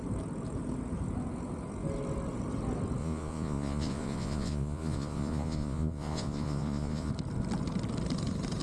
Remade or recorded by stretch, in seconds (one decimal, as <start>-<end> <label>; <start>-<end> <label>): 0.0-3.0 recorded; 3.0-7.1 remade; 7.1-8.6 recorded